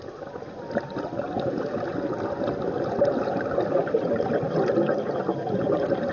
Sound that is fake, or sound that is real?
real